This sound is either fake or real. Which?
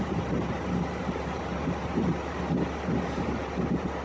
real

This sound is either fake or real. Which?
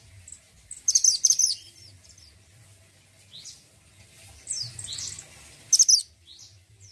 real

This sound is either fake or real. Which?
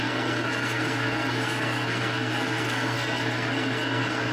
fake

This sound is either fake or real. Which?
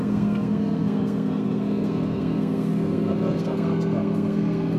fake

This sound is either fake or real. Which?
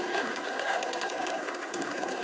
fake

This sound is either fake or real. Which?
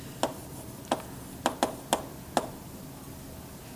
real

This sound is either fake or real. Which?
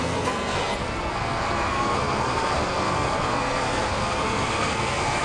fake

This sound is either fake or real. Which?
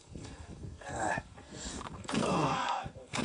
fake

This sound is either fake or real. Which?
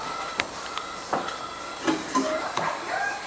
real